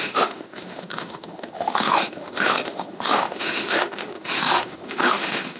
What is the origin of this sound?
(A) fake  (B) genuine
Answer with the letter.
A